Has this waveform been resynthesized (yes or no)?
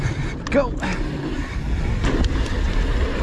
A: no